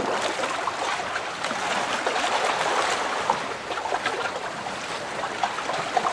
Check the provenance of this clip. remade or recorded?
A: recorded